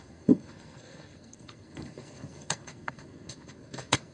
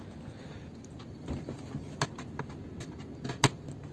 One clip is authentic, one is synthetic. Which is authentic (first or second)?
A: second